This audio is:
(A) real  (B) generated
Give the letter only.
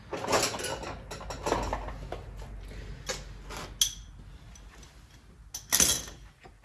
A